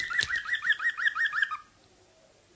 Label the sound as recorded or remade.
recorded